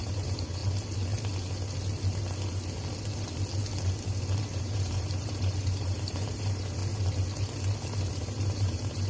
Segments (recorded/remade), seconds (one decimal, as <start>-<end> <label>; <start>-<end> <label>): 0.0-0.6 remade; 0.6-4.6 recorded; 4.6-6.8 remade; 6.8-8.0 recorded; 8.0-9.1 remade